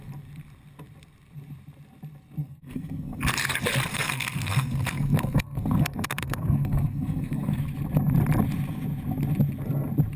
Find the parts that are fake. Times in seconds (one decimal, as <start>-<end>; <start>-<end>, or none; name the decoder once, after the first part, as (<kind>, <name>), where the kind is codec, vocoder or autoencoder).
2.4-3.2 (codec, SNAC); 3.9-7.6